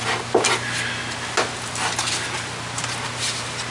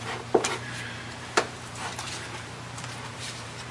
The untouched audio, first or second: first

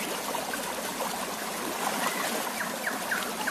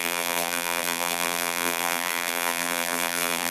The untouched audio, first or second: first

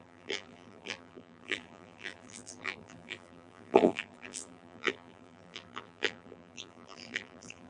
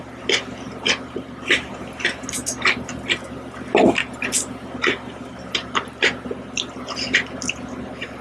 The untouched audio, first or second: second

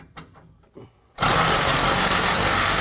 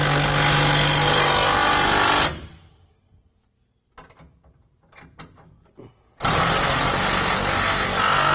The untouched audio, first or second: second